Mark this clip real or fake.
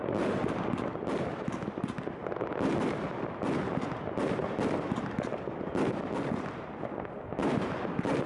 real